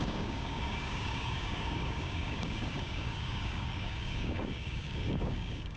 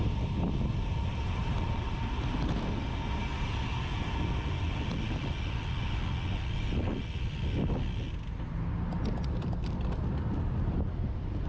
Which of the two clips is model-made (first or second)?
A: first